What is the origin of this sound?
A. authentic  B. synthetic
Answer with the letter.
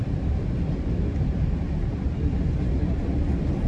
A